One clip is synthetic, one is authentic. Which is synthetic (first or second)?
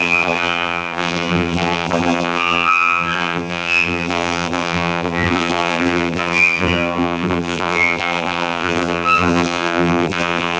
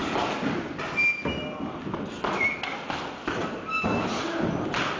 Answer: first